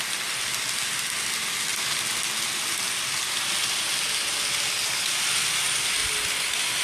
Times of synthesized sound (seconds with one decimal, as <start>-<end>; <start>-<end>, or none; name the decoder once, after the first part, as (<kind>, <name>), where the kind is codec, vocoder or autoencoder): none